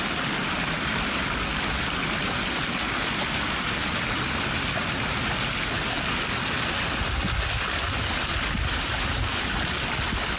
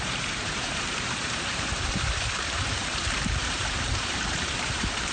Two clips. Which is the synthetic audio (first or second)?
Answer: second